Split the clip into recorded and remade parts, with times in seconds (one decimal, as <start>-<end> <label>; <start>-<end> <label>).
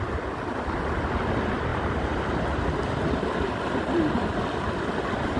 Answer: 0.0-5.4 recorded